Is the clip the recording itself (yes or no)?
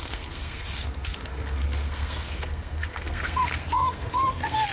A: no